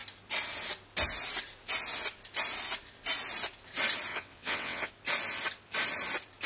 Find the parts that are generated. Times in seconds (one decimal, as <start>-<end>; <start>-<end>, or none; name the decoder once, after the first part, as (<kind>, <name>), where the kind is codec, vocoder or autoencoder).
4.1-4.9 (vocoder, WaveNeXt)